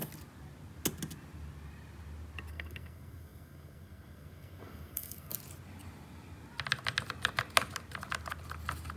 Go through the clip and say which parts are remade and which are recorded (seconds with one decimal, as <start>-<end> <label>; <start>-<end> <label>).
0.0-2.5 recorded; 2.5-5.3 remade; 5.3-9.0 recorded

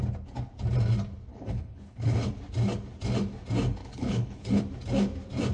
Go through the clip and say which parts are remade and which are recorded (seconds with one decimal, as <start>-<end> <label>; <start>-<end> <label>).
0.0-1.3 recorded; 1.3-2.3 remade; 2.3-3.8 recorded; 3.8-4.6 remade; 4.6-5.5 recorded

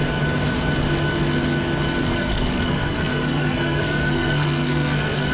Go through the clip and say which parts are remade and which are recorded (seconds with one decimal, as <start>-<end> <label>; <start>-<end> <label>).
0.0-2.1 recorded; 2.1-5.3 remade

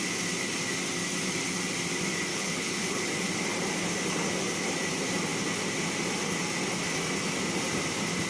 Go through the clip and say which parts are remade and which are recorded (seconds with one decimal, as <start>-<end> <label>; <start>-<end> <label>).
0.0-2.3 recorded; 2.3-3.0 remade; 3.0-8.3 recorded

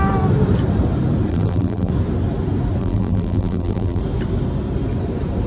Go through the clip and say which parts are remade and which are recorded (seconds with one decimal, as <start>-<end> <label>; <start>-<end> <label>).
0.0-1.3 recorded; 1.3-1.9 remade; 1.9-2.8 recorded; 2.8-4.0 remade; 4.0-5.5 recorded

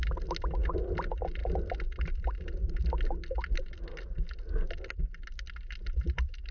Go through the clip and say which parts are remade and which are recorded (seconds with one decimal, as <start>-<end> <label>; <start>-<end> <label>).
0.0-6.5 recorded